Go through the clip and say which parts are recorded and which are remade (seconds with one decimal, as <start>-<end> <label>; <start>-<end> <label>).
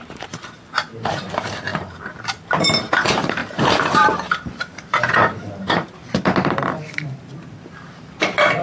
0.0-6.0 remade; 6.0-6.5 recorded; 6.5-8.6 remade